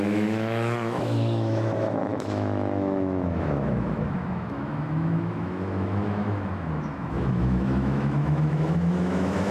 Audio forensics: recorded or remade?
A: remade